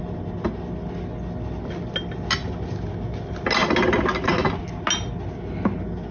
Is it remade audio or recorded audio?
recorded